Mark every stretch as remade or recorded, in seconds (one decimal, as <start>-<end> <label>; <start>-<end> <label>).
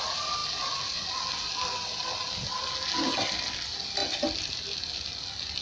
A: 0.0-5.6 recorded